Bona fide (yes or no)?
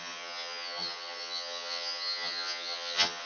no